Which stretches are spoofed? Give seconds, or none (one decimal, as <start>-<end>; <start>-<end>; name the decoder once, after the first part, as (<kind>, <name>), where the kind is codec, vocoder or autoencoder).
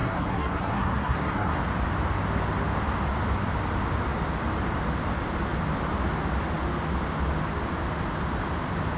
0.0-1.6 (codec, SNAC)